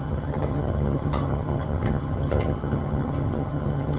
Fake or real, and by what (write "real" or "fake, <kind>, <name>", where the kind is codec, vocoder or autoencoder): fake, vocoder, HiFi-GAN